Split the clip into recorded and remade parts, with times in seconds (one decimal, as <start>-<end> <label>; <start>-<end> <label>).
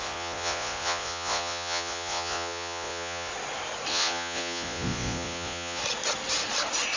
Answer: 0.0-3.3 remade; 3.3-3.9 recorded; 3.9-5.8 remade; 5.8-7.0 recorded